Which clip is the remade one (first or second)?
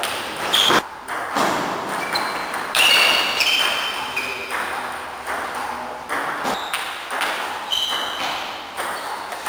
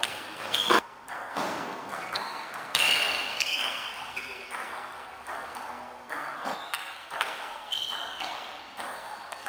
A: second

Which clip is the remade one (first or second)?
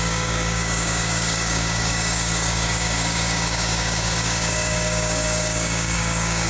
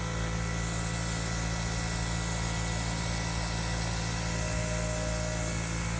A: first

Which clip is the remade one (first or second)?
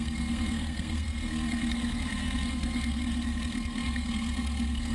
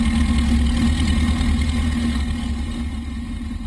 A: first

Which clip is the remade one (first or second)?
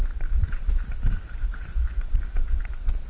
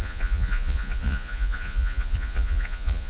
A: second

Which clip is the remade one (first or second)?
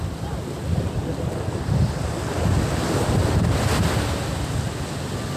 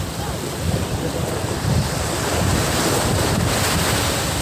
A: second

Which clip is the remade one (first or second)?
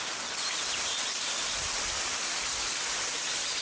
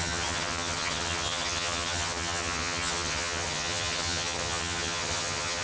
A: second